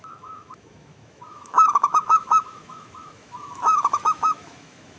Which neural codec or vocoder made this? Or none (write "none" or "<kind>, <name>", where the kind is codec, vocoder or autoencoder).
autoencoder, DAC-VAE